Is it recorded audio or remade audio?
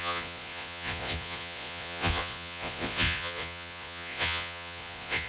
remade